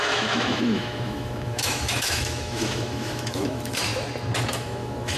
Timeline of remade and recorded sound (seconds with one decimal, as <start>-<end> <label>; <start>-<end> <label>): 0.0-3.9 remade; 3.9-4.5 recorded; 4.5-5.2 remade